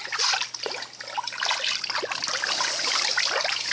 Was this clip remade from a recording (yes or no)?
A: no